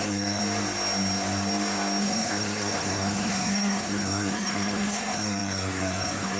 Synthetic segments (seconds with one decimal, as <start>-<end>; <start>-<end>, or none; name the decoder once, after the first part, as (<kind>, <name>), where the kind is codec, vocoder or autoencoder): 0.0-0.4 (codec, SNAC); 2.0-6.4